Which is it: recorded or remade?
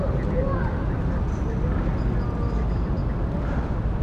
recorded